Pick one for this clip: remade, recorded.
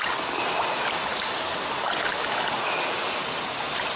recorded